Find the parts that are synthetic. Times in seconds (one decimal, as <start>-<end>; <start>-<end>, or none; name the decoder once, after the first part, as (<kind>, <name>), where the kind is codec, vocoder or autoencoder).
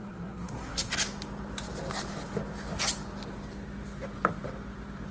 0.0-0.9 (codec, SNAC)